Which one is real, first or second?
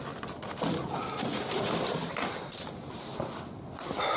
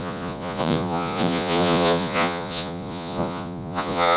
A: first